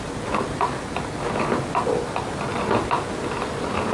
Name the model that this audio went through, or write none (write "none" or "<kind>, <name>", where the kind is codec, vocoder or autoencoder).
none